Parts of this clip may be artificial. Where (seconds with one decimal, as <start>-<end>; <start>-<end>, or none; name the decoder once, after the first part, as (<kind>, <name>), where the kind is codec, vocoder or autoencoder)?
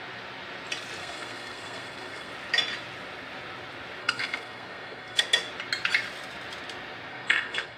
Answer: 1.0-2.3 (codec, SNAC); 4.0-5.2; 7.1-7.8